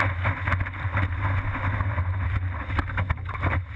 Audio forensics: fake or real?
real